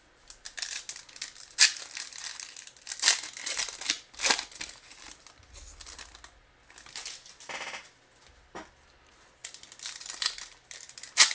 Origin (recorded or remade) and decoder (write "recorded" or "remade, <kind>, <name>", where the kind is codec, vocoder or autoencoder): recorded